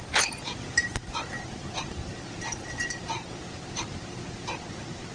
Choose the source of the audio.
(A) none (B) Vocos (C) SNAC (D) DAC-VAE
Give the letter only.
A